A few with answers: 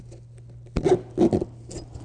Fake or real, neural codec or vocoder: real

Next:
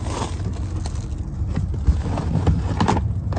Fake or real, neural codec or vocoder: real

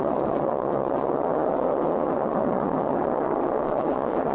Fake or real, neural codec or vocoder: fake, vocoder, WaveNeXt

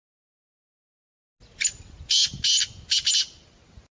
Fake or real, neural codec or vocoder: real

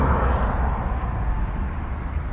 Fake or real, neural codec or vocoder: real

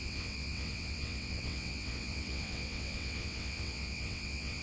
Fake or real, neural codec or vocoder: fake, vocoder, WaveNeXt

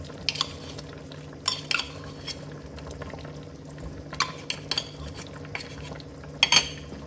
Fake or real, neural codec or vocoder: real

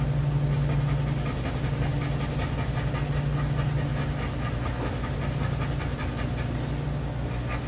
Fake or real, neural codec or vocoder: real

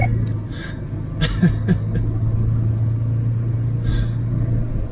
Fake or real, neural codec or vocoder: real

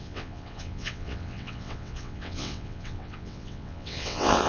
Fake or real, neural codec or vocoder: fake, vocoder, WaveNeXt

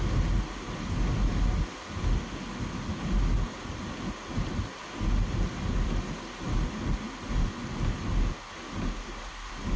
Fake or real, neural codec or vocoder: real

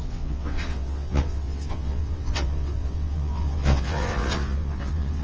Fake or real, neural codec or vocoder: fake, vocoder, WaveNeXt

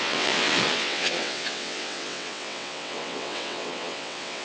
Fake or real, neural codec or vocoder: fake, vocoder, WaveNeXt